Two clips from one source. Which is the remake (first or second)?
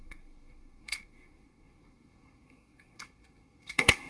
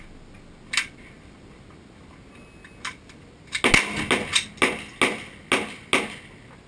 first